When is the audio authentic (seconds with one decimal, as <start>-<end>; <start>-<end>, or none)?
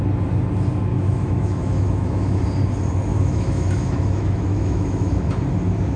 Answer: 0.0-0.9; 2.4-3.1; 5.3-6.0